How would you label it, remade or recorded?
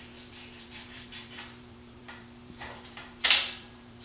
remade